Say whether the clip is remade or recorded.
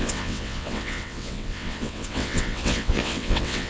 remade